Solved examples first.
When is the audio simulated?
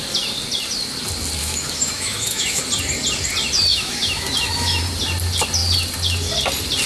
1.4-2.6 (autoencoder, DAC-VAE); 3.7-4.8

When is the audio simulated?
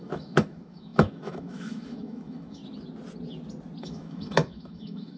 0.0-2.6 (autoencoder, DAC-VAE); 3.8-5.2